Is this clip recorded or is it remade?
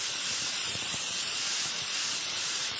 remade